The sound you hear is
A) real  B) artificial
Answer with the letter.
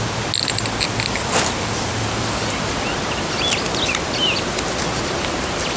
A